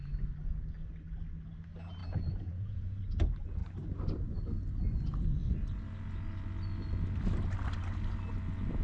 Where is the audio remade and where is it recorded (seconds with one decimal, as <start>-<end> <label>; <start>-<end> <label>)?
0.0-2.0 recorded; 2.0-3.0 remade; 3.0-8.8 recorded